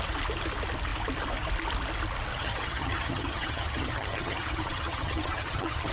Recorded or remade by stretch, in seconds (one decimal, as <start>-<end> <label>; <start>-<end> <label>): 0.0-2.3 recorded; 2.3-5.9 remade